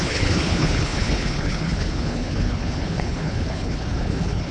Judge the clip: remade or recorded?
remade